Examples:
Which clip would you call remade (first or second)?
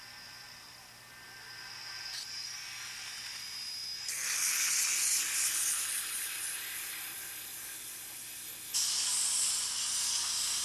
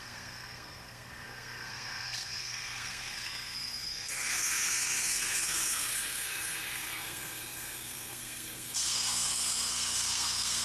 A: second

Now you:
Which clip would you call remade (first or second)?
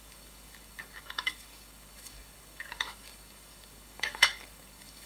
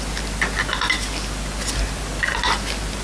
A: first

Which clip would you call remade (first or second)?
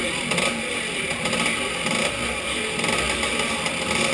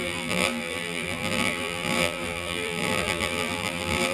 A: second